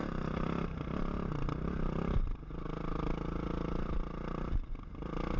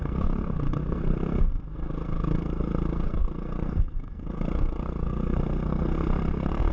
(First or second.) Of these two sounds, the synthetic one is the second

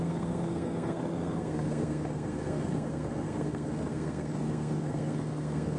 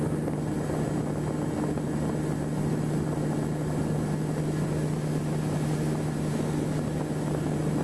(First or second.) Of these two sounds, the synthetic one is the first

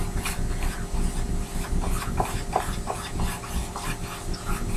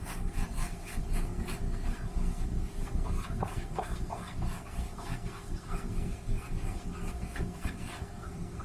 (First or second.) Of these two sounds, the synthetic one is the second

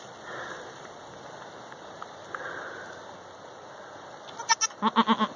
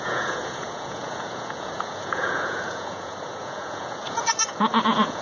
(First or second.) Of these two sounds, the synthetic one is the second